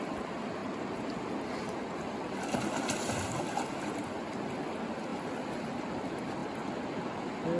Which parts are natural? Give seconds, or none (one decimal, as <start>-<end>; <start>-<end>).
0.6-3.8; 6.4-7.6